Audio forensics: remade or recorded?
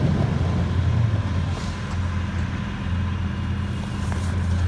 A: recorded